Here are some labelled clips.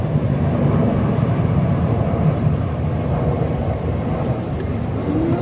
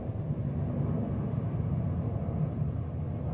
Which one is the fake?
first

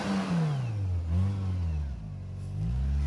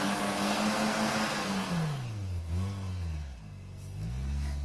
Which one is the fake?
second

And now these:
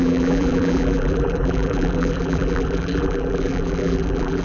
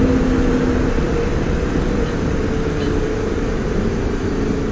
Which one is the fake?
first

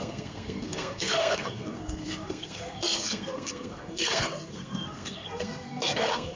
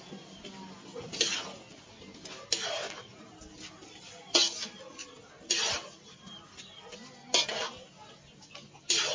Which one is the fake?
first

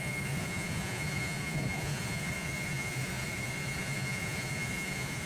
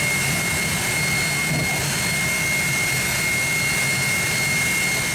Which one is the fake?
first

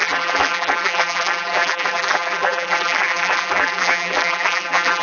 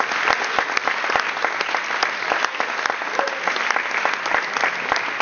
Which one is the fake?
first